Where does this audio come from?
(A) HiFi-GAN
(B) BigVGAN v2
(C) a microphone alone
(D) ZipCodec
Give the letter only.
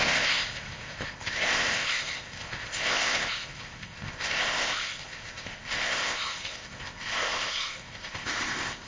D